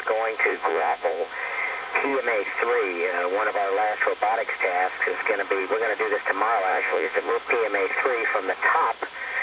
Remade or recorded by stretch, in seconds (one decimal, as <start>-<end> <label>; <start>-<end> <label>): 0.0-0.5 recorded; 0.5-1.3 remade; 1.3-6.7 recorded; 6.7-7.3 remade; 7.3-9.4 recorded